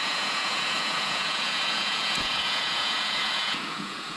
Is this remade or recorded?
remade